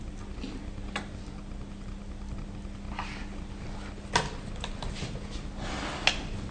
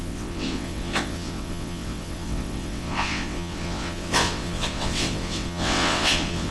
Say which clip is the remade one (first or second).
second